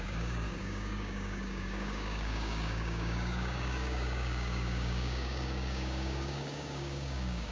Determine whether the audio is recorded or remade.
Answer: remade